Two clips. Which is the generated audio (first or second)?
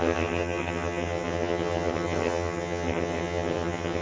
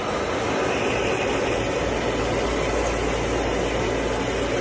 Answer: first